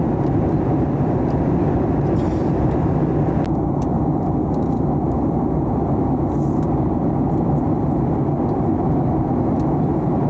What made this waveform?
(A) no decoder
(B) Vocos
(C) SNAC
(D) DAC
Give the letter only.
A